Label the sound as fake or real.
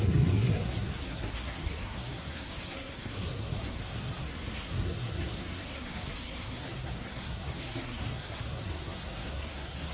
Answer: fake